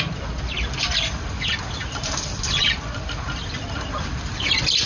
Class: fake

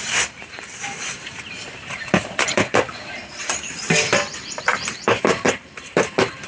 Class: fake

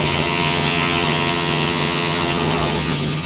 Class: fake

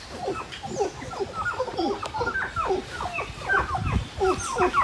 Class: real